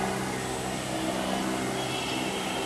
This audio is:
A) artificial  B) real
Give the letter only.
B